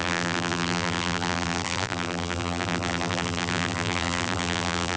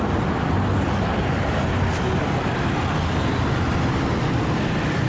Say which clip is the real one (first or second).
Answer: second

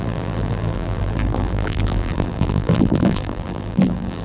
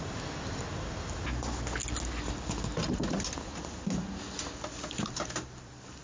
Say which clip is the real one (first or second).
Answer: second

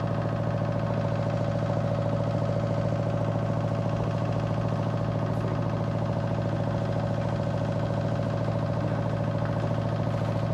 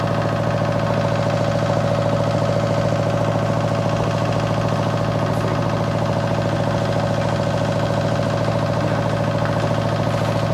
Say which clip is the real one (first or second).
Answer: second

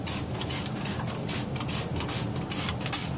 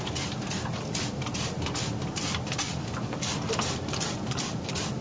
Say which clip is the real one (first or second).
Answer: first